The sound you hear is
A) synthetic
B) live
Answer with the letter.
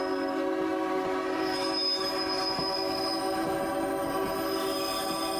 B